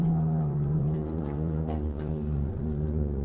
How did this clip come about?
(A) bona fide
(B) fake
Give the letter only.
B